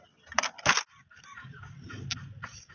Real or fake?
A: real